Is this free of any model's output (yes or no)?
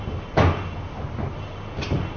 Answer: yes